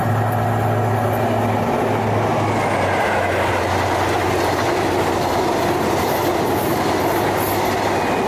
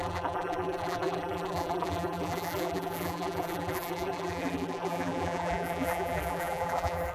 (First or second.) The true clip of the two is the first